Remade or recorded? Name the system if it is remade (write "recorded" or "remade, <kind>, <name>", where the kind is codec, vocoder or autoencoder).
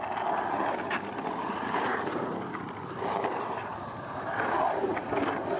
recorded